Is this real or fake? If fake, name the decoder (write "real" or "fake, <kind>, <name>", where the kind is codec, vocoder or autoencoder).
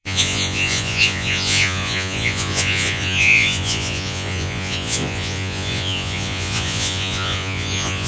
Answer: fake, vocoder, Vocos